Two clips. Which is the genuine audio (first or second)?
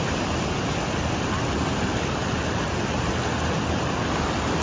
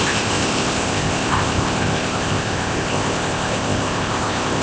first